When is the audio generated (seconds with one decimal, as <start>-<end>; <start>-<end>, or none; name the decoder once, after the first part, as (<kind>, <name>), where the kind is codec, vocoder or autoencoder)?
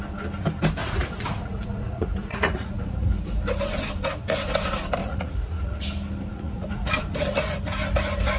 0.8-3.1 (vocoder, Vocos); 5.0-5.8; 6.3-6.9